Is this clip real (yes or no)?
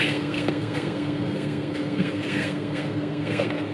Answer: no